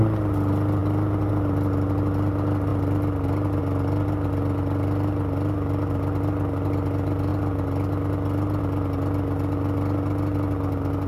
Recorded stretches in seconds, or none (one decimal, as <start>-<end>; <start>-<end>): 0.0-11.1